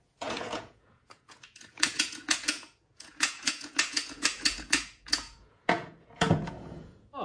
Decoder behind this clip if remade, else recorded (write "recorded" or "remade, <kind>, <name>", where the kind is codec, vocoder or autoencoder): remade, vocoder, Vocos